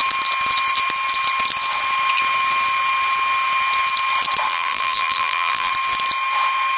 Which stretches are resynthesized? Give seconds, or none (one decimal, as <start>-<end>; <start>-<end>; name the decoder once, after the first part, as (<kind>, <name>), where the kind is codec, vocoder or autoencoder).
4.5-5.7 (vocoder, BigVGAN v2)